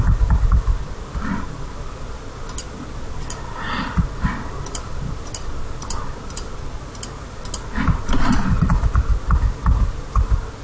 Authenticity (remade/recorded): recorded